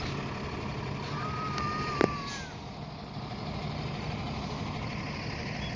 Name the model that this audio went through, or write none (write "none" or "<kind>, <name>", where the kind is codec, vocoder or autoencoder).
none